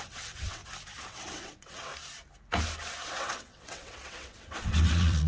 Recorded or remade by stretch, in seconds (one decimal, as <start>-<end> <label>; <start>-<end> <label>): 0.0-0.6 remade; 0.6-1.1 recorded; 1.1-1.9 remade; 1.9-3.1 recorded; 3.1-5.3 remade

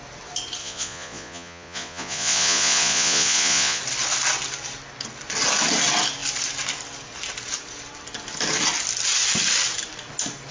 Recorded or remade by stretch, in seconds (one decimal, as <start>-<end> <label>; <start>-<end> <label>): 0.0-0.6 recorded; 0.6-3.8 remade; 3.8-10.5 recorded